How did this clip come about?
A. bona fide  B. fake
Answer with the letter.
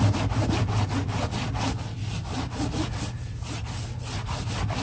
A